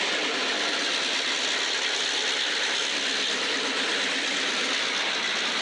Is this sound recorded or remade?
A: recorded